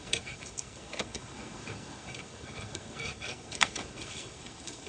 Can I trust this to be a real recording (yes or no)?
no